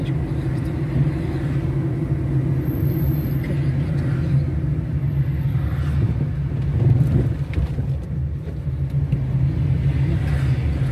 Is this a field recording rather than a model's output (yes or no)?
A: yes